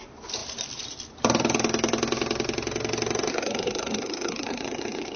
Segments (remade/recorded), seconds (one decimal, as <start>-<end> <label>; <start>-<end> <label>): 0.0-3.3 recorded; 3.3-5.2 remade